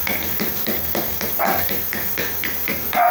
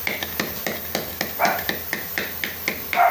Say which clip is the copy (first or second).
first